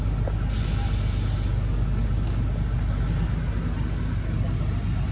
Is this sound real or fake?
real